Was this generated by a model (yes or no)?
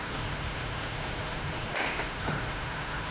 yes